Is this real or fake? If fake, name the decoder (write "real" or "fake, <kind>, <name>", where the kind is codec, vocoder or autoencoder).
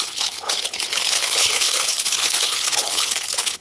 fake, codec, HILCodec